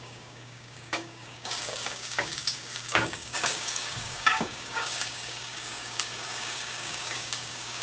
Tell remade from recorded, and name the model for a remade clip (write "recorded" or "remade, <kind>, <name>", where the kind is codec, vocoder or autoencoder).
remade, codec, DAC